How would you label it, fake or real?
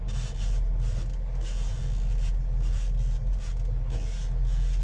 real